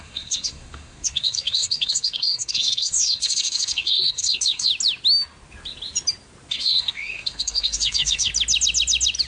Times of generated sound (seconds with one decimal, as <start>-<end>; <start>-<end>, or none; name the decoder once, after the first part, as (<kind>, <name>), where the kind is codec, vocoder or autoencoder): 0.0-4.7 (codec, SNAC); 6.5-8.3